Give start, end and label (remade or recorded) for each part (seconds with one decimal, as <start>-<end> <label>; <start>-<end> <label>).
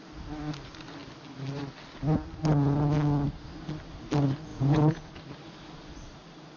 0.0-4.5 recorded; 4.5-5.1 remade; 5.1-6.6 recorded